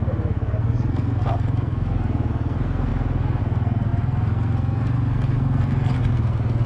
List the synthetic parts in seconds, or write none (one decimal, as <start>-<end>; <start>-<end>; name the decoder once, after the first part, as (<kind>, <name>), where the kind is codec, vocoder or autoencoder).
0.0-6.7 (codec, SNAC)